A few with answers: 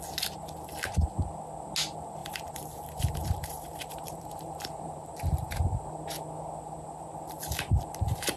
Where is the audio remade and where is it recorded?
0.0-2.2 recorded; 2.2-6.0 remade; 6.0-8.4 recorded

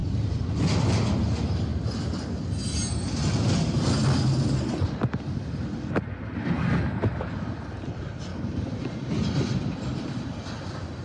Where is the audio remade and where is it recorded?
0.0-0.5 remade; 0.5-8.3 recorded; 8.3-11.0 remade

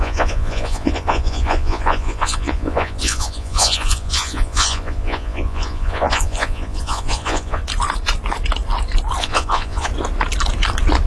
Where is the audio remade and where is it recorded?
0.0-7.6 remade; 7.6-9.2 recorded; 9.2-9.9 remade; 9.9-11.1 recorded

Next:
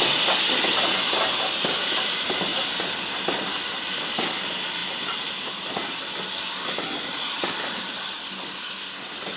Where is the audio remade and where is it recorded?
0.0-9.4 recorded

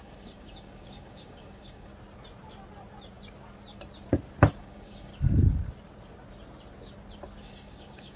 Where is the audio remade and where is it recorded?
0.0-1.9 remade; 1.9-4.6 recorded; 4.6-5.1 remade; 5.1-7.4 recorded; 7.4-8.2 remade

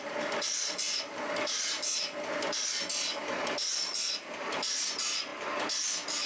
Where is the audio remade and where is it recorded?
0.0-5.3 remade; 5.3-6.3 recorded